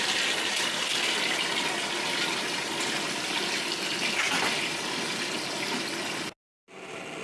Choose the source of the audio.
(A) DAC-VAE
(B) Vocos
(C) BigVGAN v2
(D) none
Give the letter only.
D